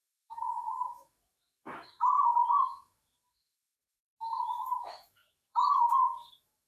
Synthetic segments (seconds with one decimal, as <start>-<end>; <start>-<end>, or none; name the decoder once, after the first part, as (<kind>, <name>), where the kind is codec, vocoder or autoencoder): 0.0-6.7 (autoencoder, DAC-VAE)